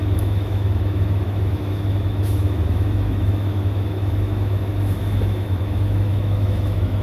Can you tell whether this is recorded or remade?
remade